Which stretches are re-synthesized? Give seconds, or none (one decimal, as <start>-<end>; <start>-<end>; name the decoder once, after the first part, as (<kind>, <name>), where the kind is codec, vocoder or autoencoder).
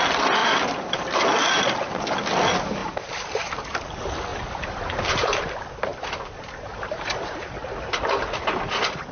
0.4-1.2 (vocoder, BigVGAN v2); 2.8-3.5; 4.3-5.5; 5.9-7.5